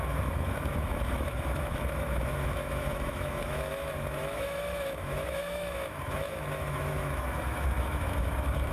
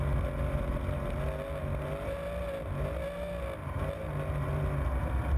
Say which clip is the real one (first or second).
second